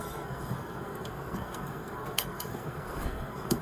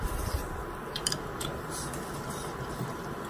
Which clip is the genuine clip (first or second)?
second